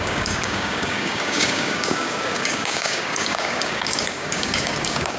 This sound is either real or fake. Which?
fake